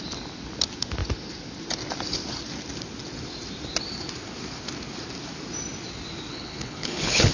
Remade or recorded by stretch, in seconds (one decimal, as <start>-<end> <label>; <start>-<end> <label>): 0.0-6.3 recorded; 6.3-7.3 remade